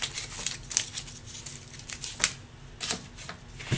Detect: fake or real real